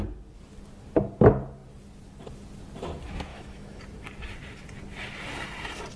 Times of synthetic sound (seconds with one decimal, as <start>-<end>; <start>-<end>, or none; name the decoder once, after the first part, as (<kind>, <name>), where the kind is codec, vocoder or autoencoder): 3.3-3.8 (autoencoder, DAC-VAE)